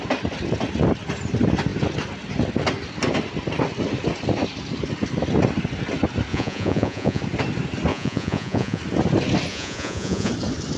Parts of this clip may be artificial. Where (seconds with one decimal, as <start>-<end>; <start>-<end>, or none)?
6.3-7.2; 7.9-8.8; 9.5-10.3